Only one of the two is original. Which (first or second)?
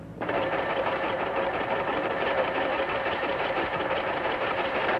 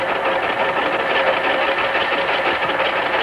second